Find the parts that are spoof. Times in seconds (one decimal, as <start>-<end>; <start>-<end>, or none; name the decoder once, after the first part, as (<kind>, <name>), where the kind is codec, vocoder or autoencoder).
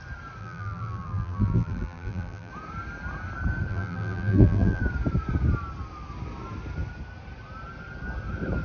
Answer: 0.4-2.5 (vocoder, BigVGAN v2); 3.7-4.8